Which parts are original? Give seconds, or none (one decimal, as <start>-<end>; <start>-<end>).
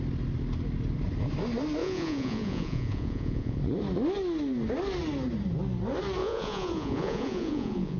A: 0.0-1.8; 3.6-6.2